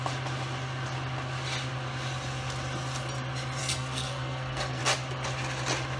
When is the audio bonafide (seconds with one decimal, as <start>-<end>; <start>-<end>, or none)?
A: 0.0-3.6; 4.8-6.0